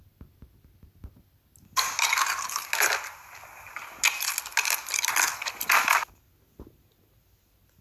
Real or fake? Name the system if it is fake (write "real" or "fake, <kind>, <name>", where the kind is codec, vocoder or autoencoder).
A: real